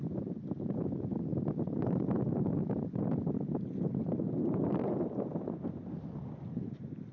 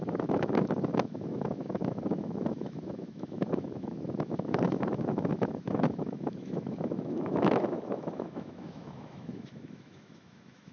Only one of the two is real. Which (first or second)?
first